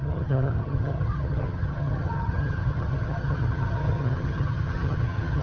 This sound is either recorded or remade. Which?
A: remade